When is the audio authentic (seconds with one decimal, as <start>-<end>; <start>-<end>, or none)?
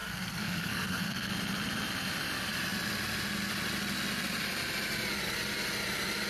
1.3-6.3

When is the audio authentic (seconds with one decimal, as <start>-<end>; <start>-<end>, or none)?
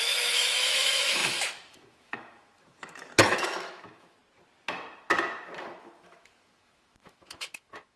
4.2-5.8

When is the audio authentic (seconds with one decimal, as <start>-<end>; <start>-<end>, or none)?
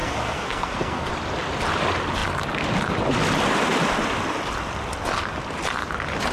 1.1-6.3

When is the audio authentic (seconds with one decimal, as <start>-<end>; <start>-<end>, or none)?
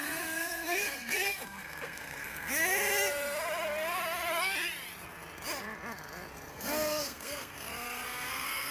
2.6-6.5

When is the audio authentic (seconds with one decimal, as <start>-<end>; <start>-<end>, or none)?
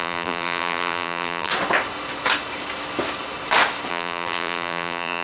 1.5-3.9